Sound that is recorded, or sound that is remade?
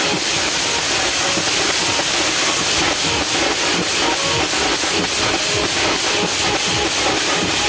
recorded